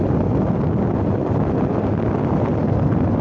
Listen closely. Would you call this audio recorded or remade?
recorded